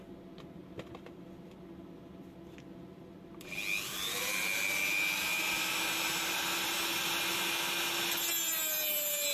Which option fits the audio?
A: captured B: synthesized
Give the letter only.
A